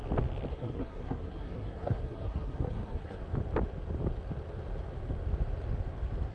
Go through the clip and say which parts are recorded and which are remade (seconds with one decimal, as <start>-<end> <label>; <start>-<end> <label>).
0.0-0.5 recorded; 0.5-3.2 remade; 3.2-6.3 recorded